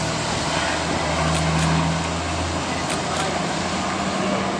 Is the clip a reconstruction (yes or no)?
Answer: no